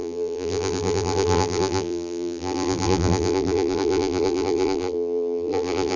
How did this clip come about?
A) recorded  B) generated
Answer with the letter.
B